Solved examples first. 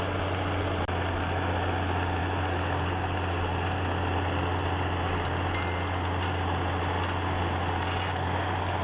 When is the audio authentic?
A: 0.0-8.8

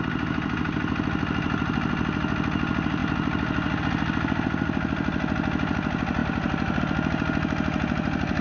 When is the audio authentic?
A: 0.0-8.4

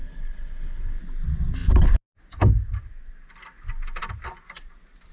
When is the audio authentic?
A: 1.0-5.1

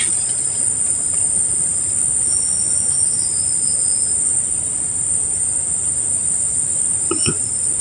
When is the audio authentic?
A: 0.0-7.8

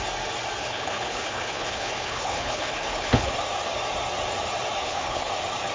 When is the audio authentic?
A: 0.0-0.6; 3.3-4.8; 5.3-5.7